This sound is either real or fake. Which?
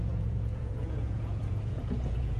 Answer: fake